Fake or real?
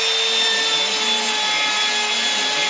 real